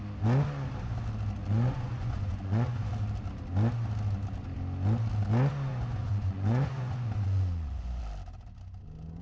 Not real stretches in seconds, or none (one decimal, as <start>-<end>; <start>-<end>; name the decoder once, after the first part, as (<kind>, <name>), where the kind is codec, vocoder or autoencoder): 1.4-2.9 (vocoder, Vocos); 5.7-8.0

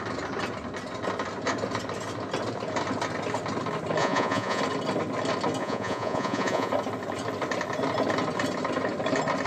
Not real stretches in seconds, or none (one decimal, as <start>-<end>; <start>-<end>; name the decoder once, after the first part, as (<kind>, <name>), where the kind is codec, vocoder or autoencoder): 4.0-4.6 (vocoder, Vocos); 5.6-6.7

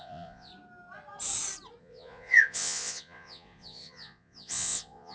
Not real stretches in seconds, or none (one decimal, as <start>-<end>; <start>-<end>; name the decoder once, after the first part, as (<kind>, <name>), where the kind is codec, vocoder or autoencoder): 0.0-0.5 (vocoder, Vocos); 1.8-5.1

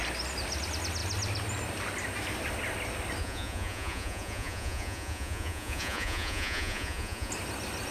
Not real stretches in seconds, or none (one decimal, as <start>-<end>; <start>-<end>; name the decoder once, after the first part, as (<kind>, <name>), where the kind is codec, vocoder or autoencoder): 3.2-7.3 (vocoder, Vocos)

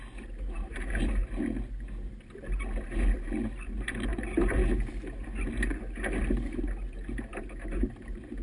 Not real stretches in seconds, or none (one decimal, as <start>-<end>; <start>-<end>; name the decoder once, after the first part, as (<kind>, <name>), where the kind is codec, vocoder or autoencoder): none